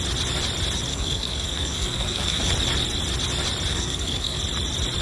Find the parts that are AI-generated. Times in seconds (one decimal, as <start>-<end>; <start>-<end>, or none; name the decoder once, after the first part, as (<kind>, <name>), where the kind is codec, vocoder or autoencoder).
0.9-2.4 (codec, SNAC); 3.7-4.4